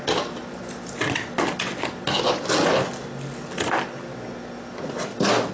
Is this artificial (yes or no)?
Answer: no